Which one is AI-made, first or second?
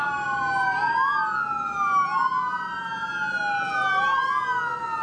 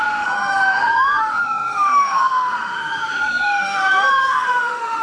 second